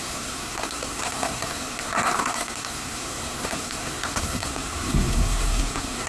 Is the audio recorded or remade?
remade